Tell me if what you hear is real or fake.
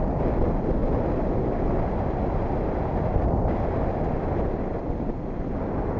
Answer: real